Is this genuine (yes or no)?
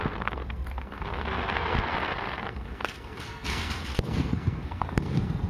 no